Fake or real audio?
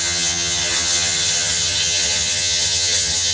fake